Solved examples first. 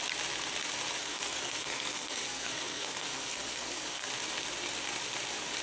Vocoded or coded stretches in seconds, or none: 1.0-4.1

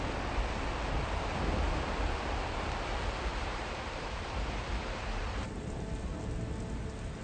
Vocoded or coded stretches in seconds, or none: 3.3-5.7

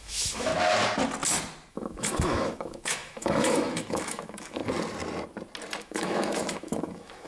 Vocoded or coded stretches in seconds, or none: 0.0-0.5; 1.7-4.6; 5.8-7.3